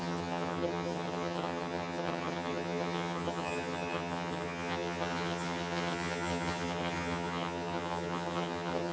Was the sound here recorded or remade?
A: remade